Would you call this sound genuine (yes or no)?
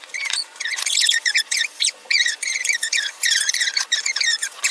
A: no